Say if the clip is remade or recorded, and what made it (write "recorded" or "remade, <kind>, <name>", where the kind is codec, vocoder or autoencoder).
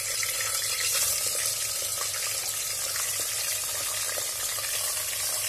recorded